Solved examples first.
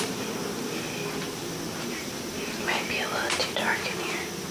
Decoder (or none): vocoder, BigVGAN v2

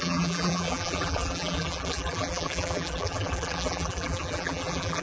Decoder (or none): vocoder, BigVGAN v2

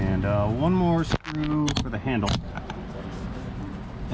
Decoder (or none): none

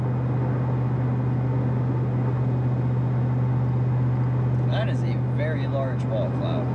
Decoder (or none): none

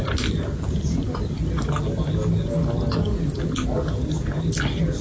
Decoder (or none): none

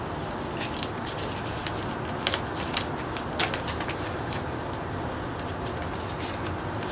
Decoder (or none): none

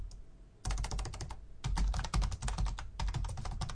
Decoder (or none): none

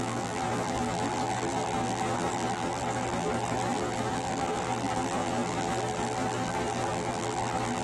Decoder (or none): vocoder, BigVGAN v2